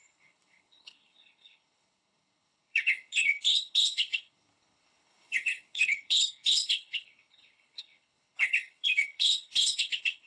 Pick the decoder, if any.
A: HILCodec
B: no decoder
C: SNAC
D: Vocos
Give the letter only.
A